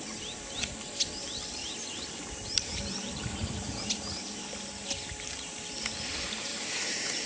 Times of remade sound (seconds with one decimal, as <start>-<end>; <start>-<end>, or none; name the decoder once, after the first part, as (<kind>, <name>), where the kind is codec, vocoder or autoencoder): 1.6-4.4 (vocoder, BigVGAN v2); 6.5-7.3